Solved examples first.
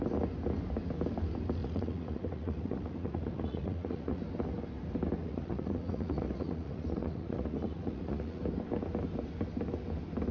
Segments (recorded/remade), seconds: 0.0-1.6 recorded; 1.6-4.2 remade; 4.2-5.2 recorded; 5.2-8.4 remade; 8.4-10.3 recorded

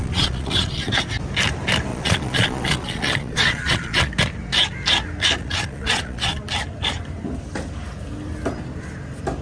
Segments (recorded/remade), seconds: 0.0-0.9 remade; 0.9-1.9 recorded; 1.9-4.1 remade; 4.1-5.4 recorded; 5.4-6.4 remade; 6.4-9.4 recorded

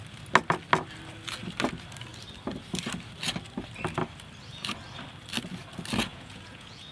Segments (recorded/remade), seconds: 0.0-6.1 recorded; 6.1-6.9 remade

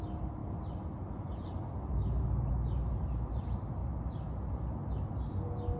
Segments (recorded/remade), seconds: 0.0-5.8 recorded

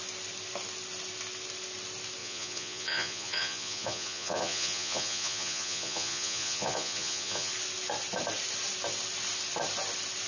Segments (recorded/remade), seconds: 0.0-2.2 recorded; 2.2-7.5 remade; 7.5-10.3 recorded